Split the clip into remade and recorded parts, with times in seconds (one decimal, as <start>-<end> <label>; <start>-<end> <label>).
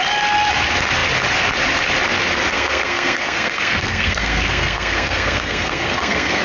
0.0-2.5 recorded; 2.5-6.4 remade